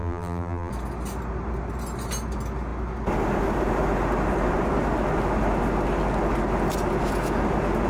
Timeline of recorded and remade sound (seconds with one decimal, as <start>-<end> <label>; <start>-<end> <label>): 0.0-0.7 remade; 0.7-7.9 recorded